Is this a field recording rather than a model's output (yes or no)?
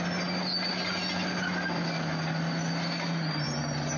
yes